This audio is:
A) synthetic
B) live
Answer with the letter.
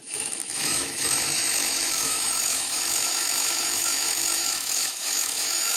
A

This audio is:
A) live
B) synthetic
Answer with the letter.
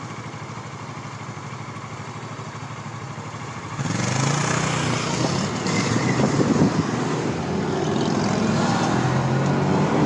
A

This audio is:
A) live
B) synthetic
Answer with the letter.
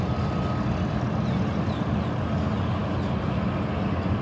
A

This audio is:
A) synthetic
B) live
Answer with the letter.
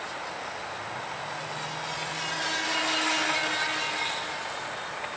B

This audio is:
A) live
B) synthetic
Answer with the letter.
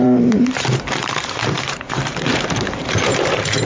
B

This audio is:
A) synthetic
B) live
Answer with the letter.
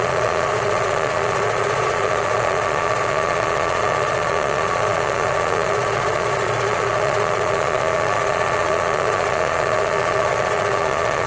A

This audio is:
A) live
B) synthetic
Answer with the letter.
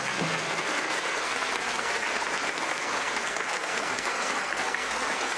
B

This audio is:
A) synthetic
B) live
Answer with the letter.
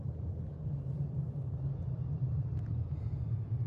B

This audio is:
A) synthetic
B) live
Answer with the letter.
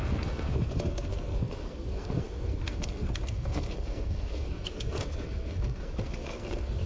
A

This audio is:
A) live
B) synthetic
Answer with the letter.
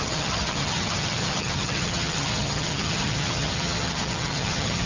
B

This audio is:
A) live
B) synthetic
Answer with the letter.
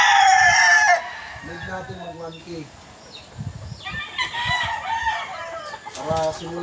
A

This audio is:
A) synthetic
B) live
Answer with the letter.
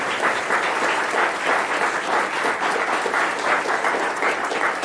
B